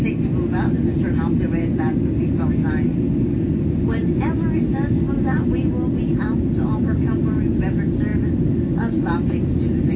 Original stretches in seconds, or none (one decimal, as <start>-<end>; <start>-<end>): 0.0-10.0